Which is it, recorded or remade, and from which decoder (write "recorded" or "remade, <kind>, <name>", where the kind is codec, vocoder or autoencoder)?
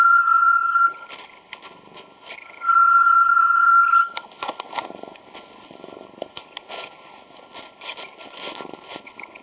remade, codec, HILCodec